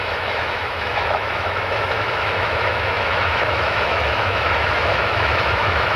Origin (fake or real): fake